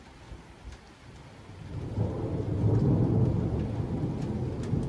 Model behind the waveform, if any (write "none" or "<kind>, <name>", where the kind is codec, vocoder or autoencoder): none